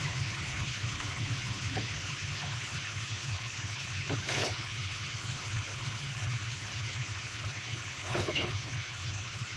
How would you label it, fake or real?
fake